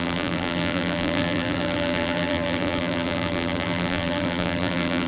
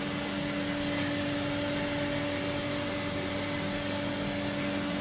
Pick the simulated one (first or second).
first